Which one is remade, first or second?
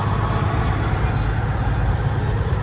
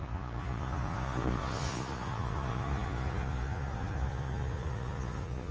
second